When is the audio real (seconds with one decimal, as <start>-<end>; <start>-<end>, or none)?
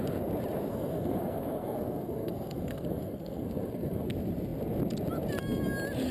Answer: 0.0-0.7; 4.1-6.1